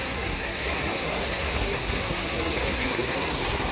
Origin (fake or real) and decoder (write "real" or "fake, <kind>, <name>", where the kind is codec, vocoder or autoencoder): fake, codec, SNAC